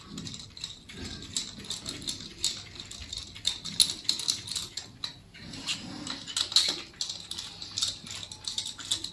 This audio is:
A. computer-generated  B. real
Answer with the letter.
B